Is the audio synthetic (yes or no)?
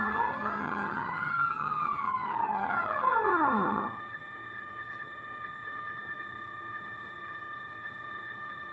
yes